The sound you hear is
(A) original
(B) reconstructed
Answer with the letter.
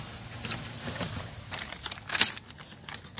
A